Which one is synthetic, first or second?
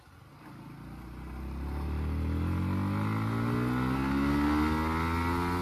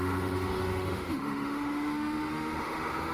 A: second